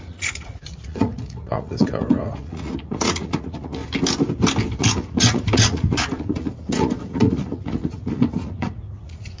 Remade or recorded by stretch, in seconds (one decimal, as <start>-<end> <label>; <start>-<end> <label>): 0.0-3.8 remade; 3.8-4.8 recorded; 4.8-9.4 remade